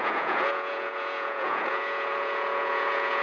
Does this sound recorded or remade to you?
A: remade